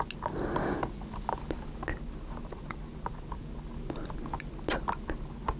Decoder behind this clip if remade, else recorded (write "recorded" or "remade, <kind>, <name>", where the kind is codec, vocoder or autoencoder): recorded